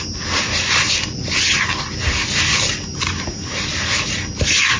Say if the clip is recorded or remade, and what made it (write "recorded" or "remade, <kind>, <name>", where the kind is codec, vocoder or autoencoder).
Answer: recorded